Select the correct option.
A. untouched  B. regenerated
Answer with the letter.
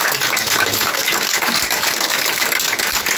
B